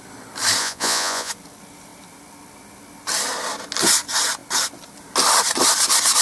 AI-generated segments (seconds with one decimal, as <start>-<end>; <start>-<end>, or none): 0.6-1.3